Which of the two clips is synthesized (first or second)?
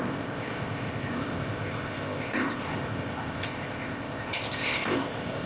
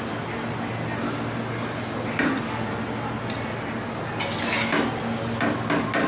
first